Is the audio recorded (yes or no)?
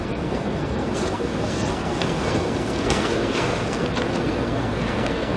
no